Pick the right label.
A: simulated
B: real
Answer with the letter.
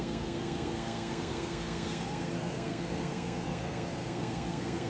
A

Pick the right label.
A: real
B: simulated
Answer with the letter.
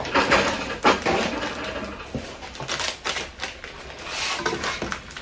A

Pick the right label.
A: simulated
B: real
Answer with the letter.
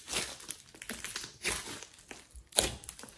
B